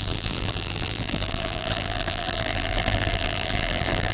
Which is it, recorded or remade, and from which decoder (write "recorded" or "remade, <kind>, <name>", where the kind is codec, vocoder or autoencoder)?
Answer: remade, vocoder, BigVGAN v2